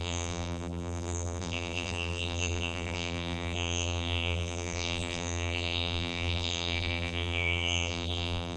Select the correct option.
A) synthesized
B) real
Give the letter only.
A